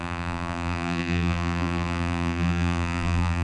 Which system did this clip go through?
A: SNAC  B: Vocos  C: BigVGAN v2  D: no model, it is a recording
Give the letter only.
C